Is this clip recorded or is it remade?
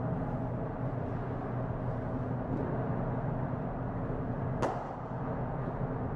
recorded